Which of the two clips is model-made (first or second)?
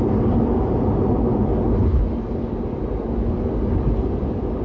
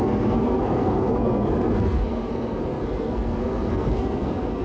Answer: second